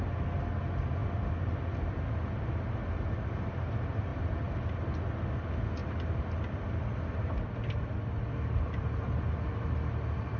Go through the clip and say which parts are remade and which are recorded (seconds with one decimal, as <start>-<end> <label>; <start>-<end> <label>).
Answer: 0.0-4.1 recorded; 4.1-4.7 remade; 4.7-5.8 recorded; 5.8-6.8 remade; 6.8-10.4 recorded